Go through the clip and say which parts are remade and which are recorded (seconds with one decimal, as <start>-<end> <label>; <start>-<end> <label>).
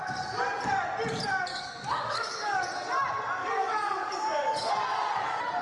0.0-1.5 recorded; 1.5-2.7 remade; 2.7-3.4 recorded; 3.4-4.7 remade; 4.7-5.6 recorded